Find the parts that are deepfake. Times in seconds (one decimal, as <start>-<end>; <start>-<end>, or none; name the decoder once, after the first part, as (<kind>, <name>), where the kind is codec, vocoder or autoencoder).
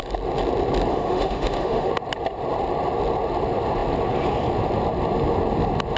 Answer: 0.9-1.9 (autoencoder, DAC-VAE)